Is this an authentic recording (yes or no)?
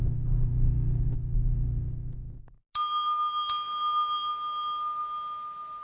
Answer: yes